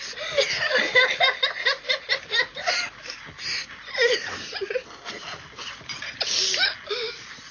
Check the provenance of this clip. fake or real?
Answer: real